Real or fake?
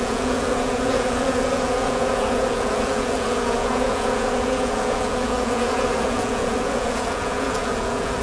fake